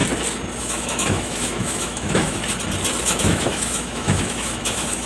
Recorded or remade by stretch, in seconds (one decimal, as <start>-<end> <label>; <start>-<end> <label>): 0.0-0.6 recorded; 0.6-2.4 remade; 2.4-3.0 recorded; 3.0-5.1 remade